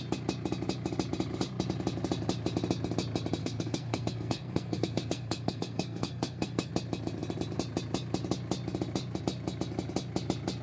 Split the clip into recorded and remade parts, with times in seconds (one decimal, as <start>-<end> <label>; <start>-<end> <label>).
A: 0.0-3.4 recorded; 3.4-6.7 remade; 6.7-10.6 recorded